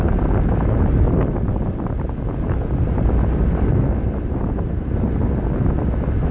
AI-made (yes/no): no